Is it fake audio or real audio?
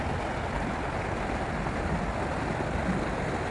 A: real